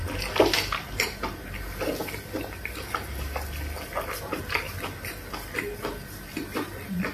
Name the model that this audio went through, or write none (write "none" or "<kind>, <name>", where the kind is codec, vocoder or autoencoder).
none